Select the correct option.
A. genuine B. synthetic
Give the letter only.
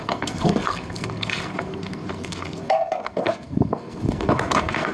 B